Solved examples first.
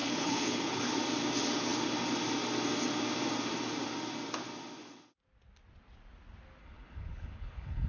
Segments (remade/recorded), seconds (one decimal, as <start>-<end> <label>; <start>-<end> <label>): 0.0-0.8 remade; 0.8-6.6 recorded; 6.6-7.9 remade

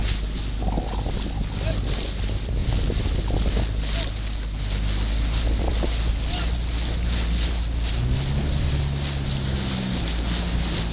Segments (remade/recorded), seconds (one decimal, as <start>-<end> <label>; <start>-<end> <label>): 0.0-10.9 recorded

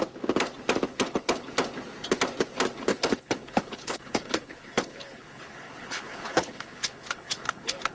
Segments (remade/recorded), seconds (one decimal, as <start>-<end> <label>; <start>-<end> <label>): 0.0-0.9 recorded; 0.9-1.5 remade; 1.5-2.9 recorded; 2.9-7.9 remade

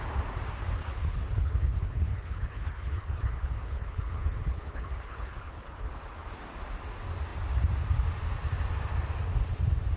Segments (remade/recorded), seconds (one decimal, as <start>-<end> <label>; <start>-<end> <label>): 0.0-0.8 recorded; 0.8-5.9 remade; 5.9-10.0 recorded

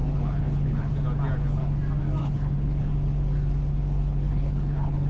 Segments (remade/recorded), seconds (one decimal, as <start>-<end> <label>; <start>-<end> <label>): 0.0-0.9 remade; 0.9-2.2 recorded; 2.2-2.9 remade; 2.9-3.7 recorded; 3.7-5.1 remade

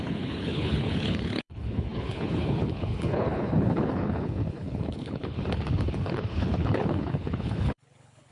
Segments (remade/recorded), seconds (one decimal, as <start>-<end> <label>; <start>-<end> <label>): 0.0-8.3 remade

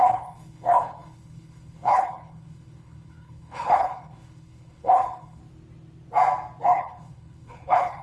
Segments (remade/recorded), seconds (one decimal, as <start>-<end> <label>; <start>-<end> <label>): 0.0-5.4 remade; 5.4-6.6 recorded; 6.6-8.0 remade

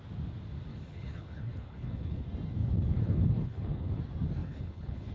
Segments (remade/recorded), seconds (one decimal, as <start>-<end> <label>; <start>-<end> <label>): 0.0-0.7 recorded; 0.7-2.2 remade; 2.2-2.6 recorded; 2.6-4.0 remade; 4.0-4.4 recorded; 4.4-5.1 remade